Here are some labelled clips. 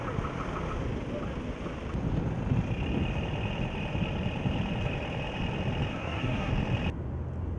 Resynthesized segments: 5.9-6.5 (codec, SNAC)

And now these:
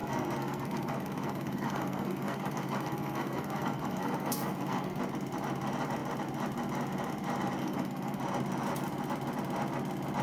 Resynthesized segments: 0.0-5.0 (codec, SNAC); 7.6-8.2

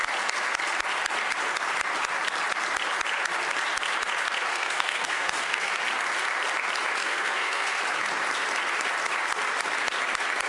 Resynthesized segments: 4.5-5.7 (codec, SNAC); 7.0-7.8

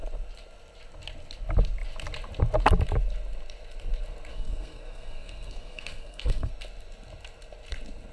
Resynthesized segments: 4.3-6.5 (codec, SNAC)